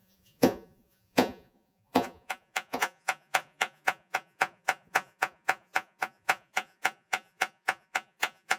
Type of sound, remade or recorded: remade